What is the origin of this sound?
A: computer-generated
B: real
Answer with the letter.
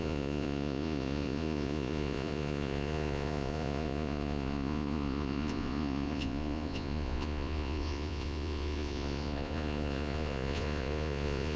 A